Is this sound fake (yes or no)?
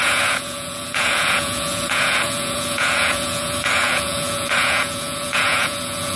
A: yes